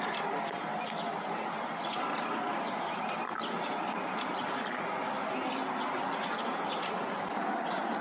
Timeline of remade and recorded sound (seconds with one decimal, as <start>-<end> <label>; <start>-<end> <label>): 0.0-8.0 recorded